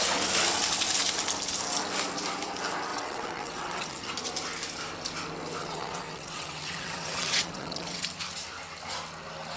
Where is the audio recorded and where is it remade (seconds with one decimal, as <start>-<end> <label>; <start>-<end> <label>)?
0.0-2.9 recorded; 2.9-4.1 remade; 4.1-5.6 recorded; 5.6-8.0 remade; 8.0-9.6 recorded